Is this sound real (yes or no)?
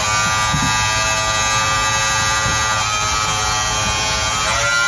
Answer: yes